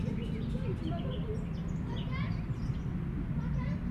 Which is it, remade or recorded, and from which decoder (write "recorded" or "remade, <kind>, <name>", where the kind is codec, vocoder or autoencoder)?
recorded